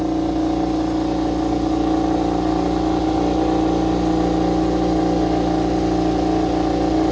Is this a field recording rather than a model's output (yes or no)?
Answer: yes